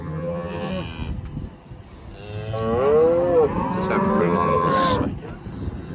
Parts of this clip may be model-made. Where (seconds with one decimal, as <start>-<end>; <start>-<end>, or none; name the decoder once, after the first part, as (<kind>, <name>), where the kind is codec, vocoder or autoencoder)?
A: 0.0-0.7 (vocoder, HiFi-GAN); 4.2-4.7